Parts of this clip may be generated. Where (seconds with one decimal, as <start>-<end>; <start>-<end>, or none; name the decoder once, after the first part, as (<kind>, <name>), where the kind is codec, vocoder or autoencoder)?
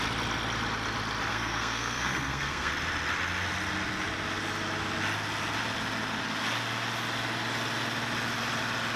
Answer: 1.3-2.7 (codec, SNAC)